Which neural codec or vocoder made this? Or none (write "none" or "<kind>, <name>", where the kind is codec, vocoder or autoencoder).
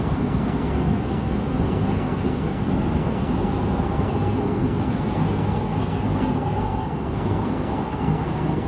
codec, SNAC